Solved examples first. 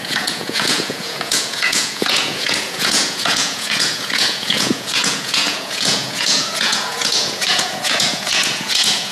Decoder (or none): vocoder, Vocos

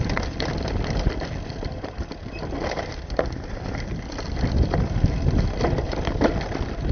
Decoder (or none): none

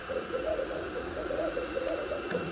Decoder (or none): vocoder, Vocos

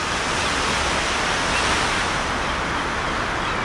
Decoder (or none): none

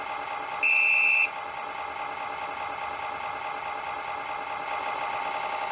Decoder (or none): none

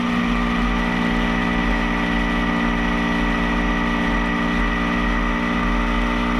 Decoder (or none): none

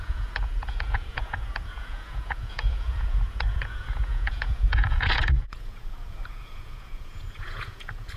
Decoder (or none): vocoder, Vocos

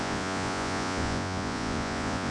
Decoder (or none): vocoder, Vocos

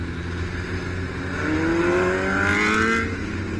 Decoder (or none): none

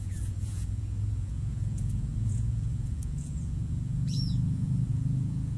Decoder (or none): vocoder, Vocos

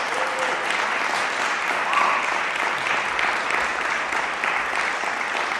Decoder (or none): none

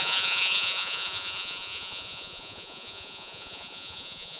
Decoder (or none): vocoder, Vocos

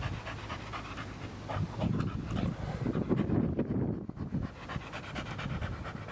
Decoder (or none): none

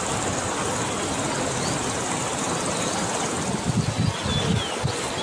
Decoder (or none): none